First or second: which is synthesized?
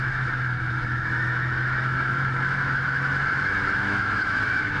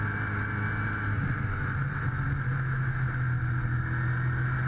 first